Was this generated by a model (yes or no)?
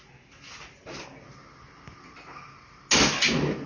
no